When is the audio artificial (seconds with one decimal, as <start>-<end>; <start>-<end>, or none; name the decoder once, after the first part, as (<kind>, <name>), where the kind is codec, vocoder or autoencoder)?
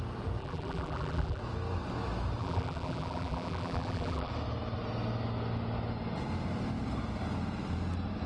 0.4-1.4 (vocoder, BigVGAN v2); 2.4-4.3